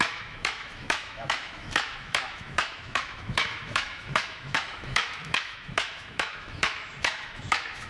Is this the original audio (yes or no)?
no